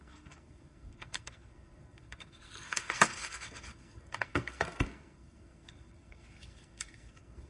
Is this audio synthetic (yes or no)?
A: yes